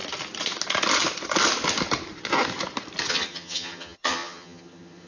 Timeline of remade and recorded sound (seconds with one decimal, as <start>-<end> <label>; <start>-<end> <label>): 0.0-3.1 recorded; 3.1-5.1 remade